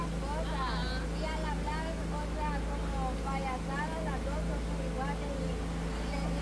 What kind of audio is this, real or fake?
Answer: real